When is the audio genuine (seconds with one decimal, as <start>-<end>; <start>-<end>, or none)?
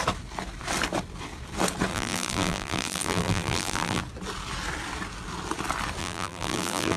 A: 0.0-1.9; 4.0-6.0